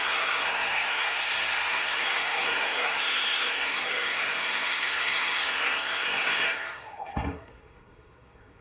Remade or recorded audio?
remade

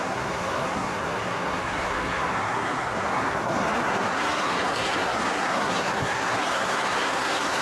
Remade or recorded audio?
remade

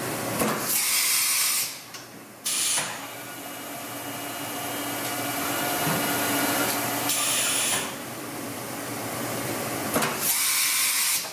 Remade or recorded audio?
recorded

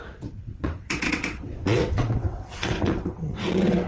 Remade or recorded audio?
remade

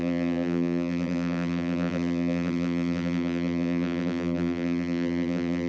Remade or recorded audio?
remade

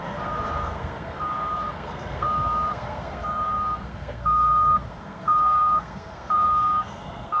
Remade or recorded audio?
remade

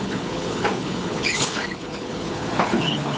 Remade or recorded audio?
remade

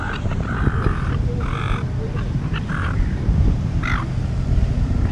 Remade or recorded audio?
remade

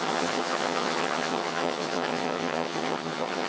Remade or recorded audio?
remade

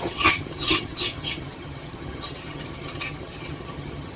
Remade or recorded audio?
remade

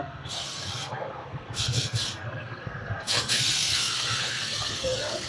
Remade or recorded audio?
remade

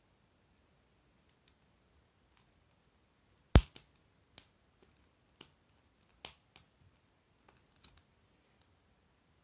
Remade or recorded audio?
recorded